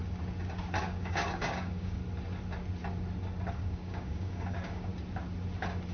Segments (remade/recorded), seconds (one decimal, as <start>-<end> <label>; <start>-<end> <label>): 0.0-0.8 recorded; 0.8-2.0 remade; 2.0-3.5 recorded; 3.5-4.9 remade; 4.9-5.9 recorded